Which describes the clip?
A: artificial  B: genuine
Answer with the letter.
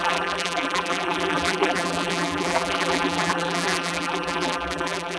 A